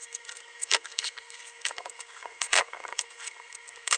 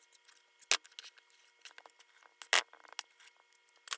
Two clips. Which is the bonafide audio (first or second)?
second